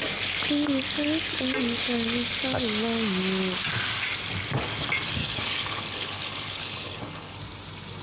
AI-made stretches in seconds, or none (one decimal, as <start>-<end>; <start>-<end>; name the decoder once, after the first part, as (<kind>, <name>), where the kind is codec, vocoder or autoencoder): 5.2-7.4 (codec, HILCodec)